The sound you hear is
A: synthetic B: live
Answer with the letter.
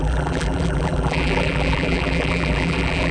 A